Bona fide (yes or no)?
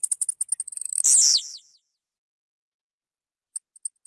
yes